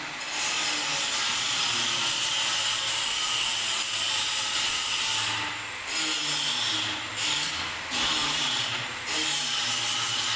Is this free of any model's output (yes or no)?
yes